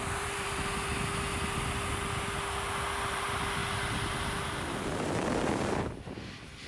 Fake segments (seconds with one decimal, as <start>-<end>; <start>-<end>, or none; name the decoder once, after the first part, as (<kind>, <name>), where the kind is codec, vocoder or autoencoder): 0.0-0.9 (vocoder, BigVGAN v2); 3.1-3.6; 4.4-6.7

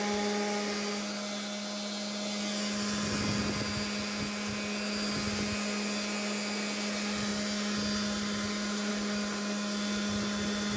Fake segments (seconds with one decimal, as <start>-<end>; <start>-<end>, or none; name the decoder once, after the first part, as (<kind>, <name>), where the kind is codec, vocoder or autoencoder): none

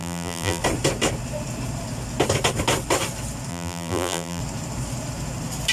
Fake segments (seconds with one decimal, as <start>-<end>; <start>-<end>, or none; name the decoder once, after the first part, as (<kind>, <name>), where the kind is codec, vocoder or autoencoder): 0.0-0.6 (vocoder, BigVGAN v2); 3.5-4.4

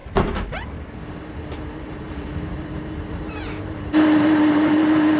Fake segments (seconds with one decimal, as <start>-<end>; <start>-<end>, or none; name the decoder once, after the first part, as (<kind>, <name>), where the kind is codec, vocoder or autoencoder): 0.0-5.2 (vocoder, BigVGAN v2)

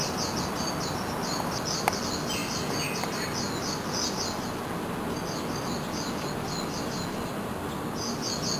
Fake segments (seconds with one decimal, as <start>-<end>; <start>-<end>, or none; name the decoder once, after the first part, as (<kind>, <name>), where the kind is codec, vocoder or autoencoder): none

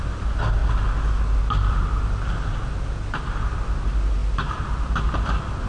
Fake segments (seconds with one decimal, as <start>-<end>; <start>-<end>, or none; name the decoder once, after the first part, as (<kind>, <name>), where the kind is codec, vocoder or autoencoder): 4.2-4.9 (vocoder, BigVGAN v2)